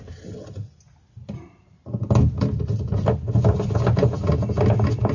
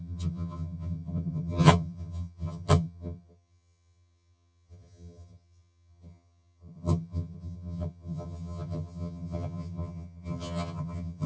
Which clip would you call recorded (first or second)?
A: first